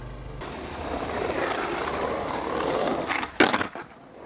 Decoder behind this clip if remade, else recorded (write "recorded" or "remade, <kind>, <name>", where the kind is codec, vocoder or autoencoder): recorded